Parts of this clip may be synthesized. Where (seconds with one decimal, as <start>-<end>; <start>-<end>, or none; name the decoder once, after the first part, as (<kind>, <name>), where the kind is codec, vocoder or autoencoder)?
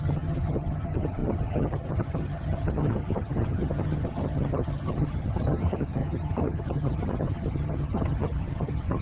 0.0-9.0 (vocoder, HiFi-GAN)